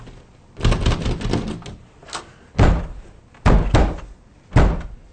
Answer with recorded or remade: recorded